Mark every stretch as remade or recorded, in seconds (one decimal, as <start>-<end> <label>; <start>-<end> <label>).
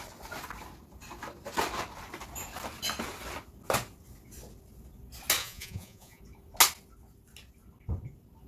0.0-5.4 recorded; 5.4-6.2 remade; 6.2-8.5 recorded